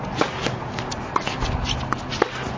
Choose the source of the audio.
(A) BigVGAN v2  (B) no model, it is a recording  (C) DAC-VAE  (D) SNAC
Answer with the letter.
B